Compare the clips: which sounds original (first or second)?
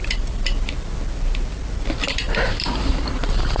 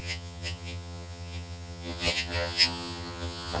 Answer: first